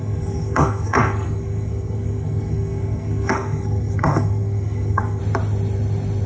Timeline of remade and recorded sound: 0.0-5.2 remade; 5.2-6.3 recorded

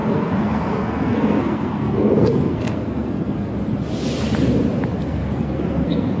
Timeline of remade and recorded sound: 0.0-3.5 remade; 3.5-5.0 recorded; 5.0-6.2 remade